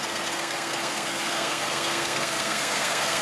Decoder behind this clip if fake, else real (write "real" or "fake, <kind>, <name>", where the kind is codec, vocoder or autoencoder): fake, codec, SNAC